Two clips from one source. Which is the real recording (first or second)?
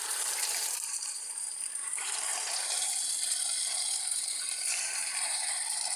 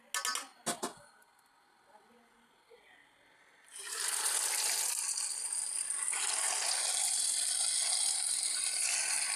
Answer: second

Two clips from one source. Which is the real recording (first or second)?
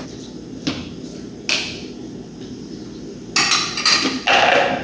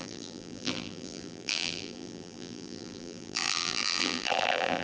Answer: first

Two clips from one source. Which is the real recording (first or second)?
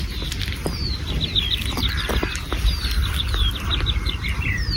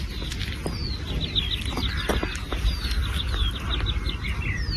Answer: second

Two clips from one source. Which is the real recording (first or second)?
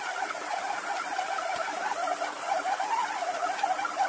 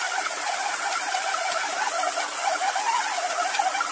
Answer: second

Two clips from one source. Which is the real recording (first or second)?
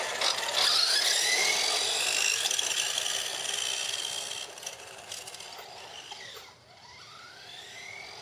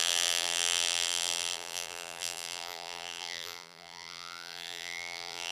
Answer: first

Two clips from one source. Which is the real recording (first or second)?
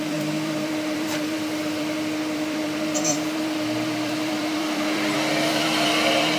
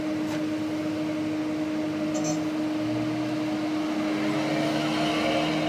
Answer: second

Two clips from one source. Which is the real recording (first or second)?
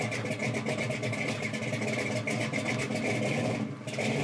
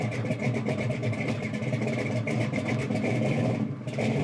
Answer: first